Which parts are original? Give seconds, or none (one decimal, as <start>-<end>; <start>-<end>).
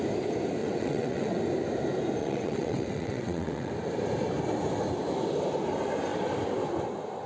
0.0-0.6; 1.4-2.2; 3.7-7.3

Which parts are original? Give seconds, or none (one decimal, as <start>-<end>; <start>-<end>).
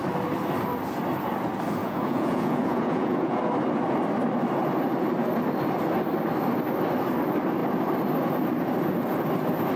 0.0-1.8; 3.4-9.8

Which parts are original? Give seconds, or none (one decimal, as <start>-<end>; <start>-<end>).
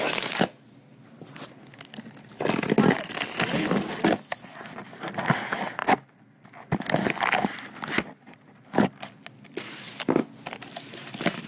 0.0-11.5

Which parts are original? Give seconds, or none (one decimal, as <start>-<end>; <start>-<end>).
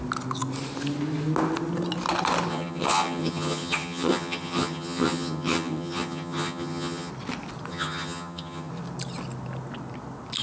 0.0-2.5; 7.1-7.7; 8.7-10.4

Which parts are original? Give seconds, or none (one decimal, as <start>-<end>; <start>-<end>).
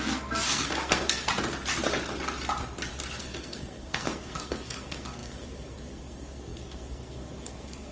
1.3-3.2